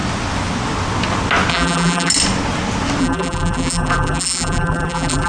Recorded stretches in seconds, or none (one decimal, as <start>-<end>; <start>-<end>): 0.0-1.5; 2.1-3.0